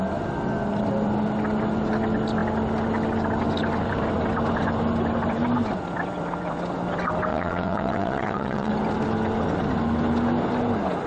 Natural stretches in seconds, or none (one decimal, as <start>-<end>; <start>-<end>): 0.0-7.3; 8.7-11.1